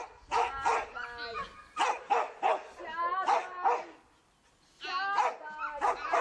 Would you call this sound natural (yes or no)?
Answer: yes